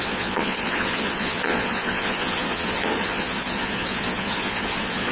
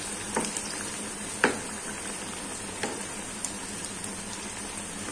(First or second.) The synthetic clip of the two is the first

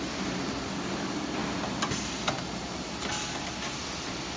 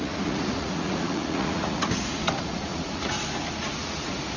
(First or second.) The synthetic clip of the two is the second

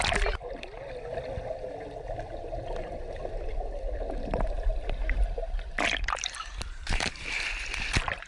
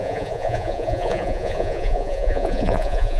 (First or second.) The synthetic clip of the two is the second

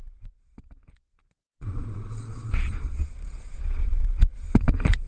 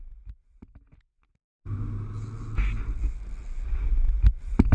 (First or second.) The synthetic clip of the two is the first